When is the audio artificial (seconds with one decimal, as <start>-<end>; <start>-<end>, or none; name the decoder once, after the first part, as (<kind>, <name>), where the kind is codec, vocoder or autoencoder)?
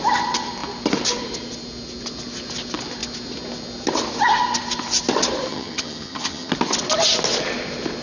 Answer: 5.5-6.5 (vocoder, HiFi-GAN)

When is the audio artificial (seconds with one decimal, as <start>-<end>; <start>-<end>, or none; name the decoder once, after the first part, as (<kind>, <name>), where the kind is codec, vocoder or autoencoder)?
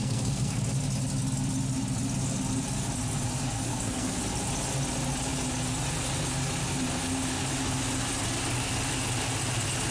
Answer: 0.0-0.6 (codec, SNAC); 3.7-4.2